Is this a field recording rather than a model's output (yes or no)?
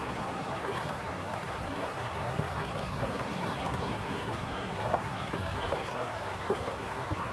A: no